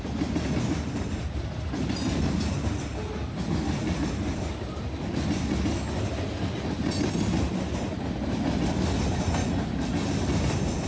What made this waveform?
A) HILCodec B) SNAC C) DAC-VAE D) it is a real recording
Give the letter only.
D